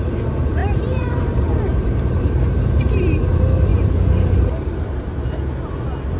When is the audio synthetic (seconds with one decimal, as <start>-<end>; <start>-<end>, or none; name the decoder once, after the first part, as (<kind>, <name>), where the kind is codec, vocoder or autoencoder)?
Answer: 0.0-5.1 (vocoder, BigVGAN v2)